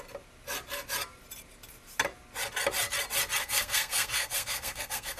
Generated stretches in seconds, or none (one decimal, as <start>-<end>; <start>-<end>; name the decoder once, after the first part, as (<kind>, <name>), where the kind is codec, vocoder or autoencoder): 3.4-5.2 (codec, SNAC)